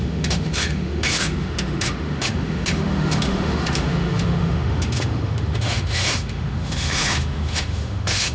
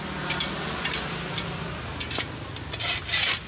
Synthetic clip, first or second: first